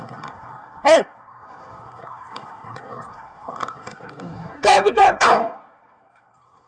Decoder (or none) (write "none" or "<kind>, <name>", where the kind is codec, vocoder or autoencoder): codec, SNAC